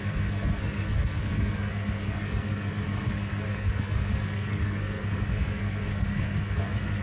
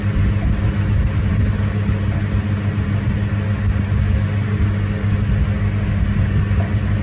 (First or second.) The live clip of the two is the second